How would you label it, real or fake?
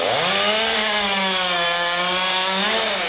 fake